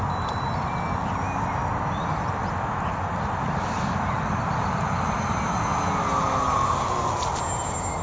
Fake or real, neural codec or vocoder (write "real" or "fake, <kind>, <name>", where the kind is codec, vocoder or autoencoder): real